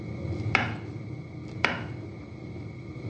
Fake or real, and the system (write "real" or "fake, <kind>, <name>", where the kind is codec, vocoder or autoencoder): real